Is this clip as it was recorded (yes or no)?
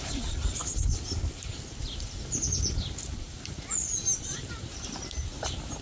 no